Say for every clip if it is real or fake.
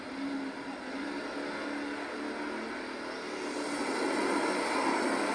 real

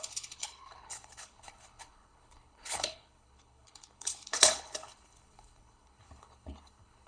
fake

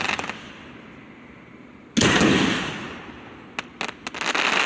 real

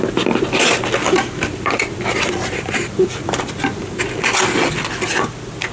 real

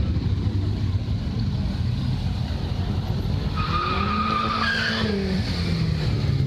real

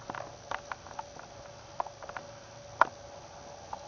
real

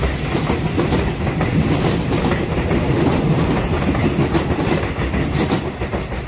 real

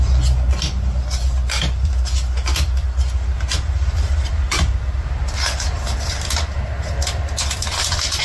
real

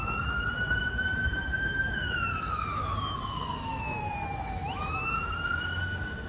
fake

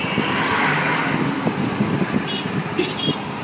real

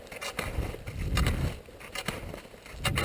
real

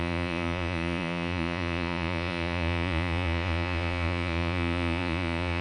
fake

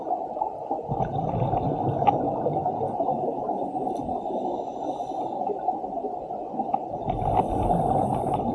real